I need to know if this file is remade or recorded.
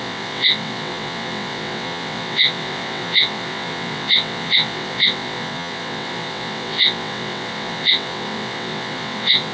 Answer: remade